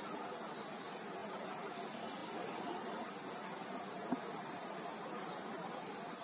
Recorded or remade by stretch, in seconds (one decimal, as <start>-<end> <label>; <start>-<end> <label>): 0.0-2.2 recorded; 2.2-3.1 remade; 3.1-4.6 recorded; 4.6-6.2 remade